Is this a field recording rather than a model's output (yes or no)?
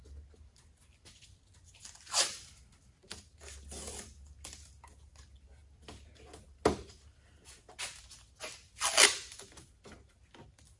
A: yes